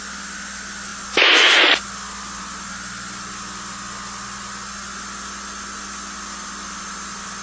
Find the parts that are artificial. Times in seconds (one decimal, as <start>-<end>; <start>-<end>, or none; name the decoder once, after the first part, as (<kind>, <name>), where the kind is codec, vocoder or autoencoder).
none